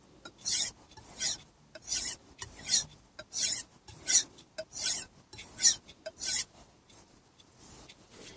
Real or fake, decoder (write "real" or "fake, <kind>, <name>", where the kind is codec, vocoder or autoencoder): real